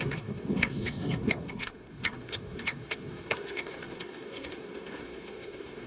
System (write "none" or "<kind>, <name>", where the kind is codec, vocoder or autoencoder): codec, SNAC